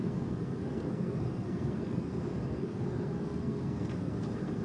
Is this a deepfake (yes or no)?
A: yes